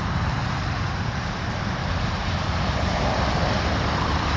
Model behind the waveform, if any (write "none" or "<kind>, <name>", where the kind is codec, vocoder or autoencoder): vocoder, BigVGAN v2